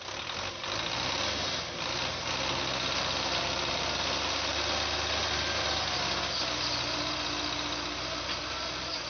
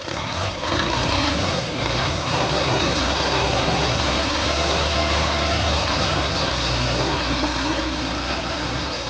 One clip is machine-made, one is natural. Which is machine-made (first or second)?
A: second